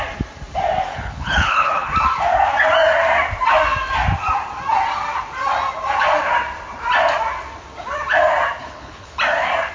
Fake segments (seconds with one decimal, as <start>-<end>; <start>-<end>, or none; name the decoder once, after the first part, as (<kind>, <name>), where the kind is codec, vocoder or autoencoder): 0.9-1.9 (codec, HILCodec); 8.6-9.2